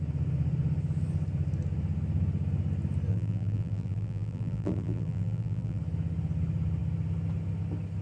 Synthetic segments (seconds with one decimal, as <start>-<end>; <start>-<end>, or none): 3.1-5.8